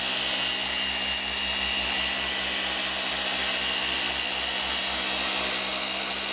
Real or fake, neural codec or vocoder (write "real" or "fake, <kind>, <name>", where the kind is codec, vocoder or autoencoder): real